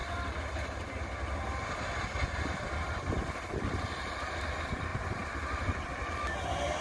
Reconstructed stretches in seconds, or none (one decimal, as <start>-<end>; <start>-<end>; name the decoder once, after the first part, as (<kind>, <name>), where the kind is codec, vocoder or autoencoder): none